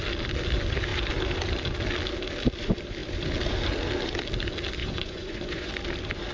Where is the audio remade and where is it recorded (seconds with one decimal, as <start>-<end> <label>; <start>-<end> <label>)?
0.0-4.8 recorded; 4.8-5.7 remade; 5.7-6.3 recorded